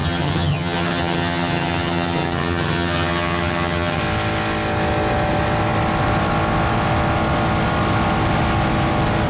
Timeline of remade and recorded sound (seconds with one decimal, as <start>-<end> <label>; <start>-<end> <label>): 0.0-4.0 remade; 4.0-9.3 recorded